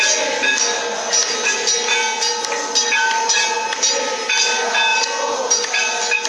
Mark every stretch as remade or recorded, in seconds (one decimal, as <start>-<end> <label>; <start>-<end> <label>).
0.0-2.8 recorded; 2.8-3.4 remade; 3.4-4.9 recorded; 4.9-5.8 remade; 5.8-6.3 recorded